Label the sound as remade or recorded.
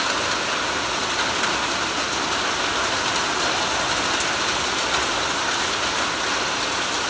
recorded